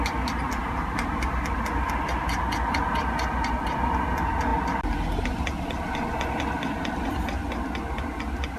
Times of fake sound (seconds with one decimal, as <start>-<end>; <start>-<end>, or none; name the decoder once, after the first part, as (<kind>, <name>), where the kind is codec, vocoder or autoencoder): none